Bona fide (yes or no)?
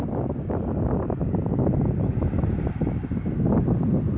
yes